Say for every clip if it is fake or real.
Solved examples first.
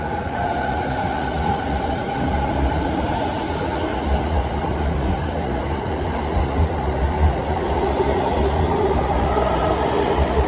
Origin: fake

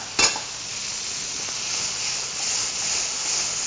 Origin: real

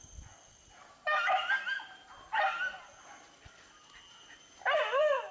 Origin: real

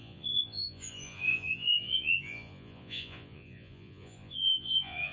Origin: fake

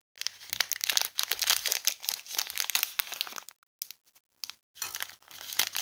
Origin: real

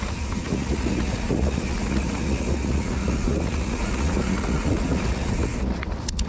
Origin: fake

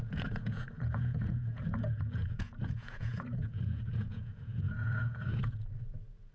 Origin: fake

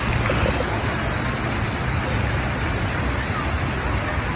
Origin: real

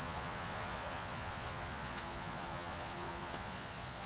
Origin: fake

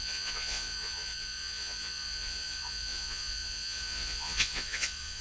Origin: fake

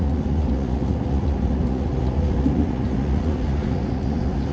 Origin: fake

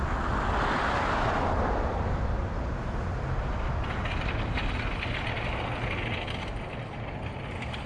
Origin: real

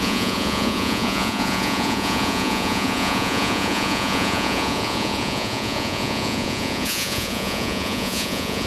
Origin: fake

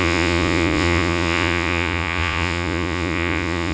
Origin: fake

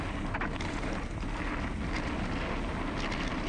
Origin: real